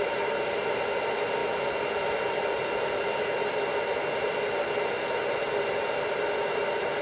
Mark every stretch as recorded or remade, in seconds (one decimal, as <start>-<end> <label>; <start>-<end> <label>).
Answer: 0.0-7.0 recorded

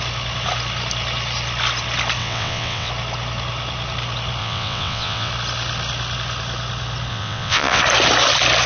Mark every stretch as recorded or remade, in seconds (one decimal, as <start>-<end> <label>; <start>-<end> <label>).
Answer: 0.0-2.2 recorded; 2.2-2.9 remade; 2.9-4.4 recorded; 4.4-5.3 remade; 5.3-7.1 recorded; 7.1-7.8 remade; 7.8-8.7 recorded

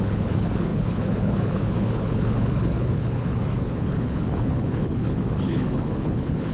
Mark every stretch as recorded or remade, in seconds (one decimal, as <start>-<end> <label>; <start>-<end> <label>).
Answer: 0.0-6.5 remade

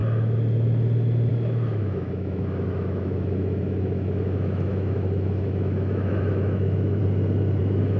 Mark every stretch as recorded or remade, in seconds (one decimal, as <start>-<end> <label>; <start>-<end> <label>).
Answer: 0.0-1.3 recorded; 1.3-7.0 remade; 7.0-7.6 recorded; 7.6-8.0 remade

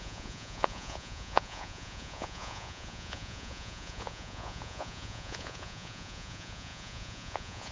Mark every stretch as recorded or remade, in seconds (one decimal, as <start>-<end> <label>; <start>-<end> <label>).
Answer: 0.0-7.7 remade